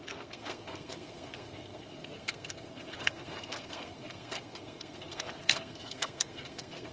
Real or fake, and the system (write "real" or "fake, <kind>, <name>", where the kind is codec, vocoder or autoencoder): fake, codec, SNAC